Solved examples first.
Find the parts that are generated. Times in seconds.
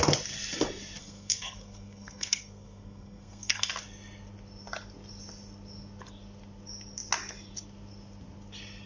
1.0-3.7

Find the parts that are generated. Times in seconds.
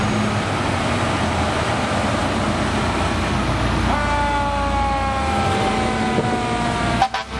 none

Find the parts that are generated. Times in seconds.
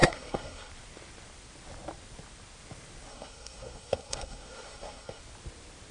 0.0-0.7; 3.1-5.2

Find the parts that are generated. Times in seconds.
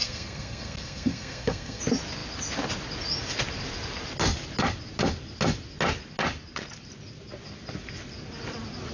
0.0-1.8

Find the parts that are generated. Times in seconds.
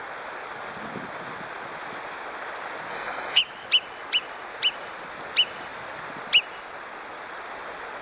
2.9-3.4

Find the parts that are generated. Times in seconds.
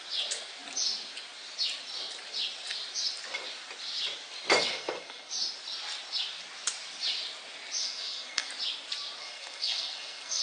4.7-5.3; 7.8-8.5; 9.2-10.4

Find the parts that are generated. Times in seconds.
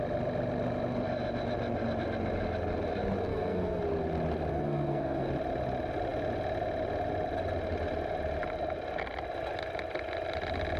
3.3-3.8; 4.5-5.3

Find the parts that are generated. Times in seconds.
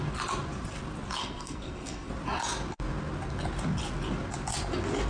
1.2-2.1